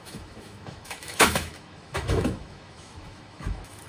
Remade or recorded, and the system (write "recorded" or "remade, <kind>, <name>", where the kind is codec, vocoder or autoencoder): remade, autoencoder, DAC-VAE